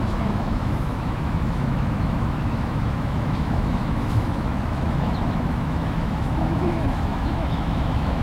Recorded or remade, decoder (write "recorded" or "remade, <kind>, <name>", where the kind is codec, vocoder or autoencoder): remade, autoencoder, DAC-VAE